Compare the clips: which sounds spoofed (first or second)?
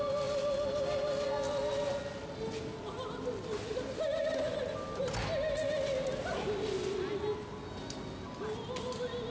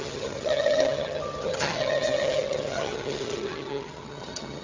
second